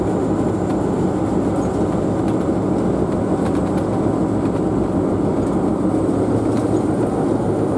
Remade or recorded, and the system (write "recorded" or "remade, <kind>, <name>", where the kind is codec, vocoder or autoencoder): recorded